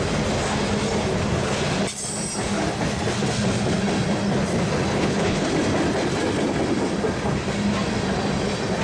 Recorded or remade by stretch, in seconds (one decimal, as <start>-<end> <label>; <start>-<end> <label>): 0.0-4.9 recorded; 4.9-5.5 remade; 5.5-8.8 recorded